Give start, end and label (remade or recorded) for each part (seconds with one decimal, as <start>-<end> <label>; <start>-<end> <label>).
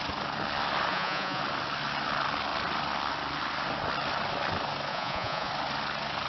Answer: 0.0-0.9 recorded; 0.9-1.4 remade; 1.4-4.9 recorded; 4.9-5.5 remade; 5.5-6.3 recorded